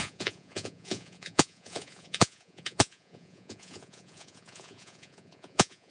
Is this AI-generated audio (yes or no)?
yes